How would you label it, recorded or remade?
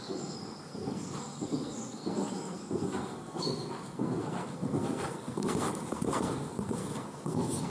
remade